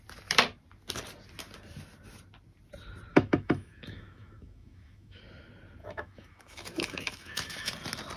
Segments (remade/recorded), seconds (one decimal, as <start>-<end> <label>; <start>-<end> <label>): 0.0-3.1 recorded; 3.1-5.2 remade; 5.2-5.8 recorded; 5.8-7.7 remade; 7.7-8.2 recorded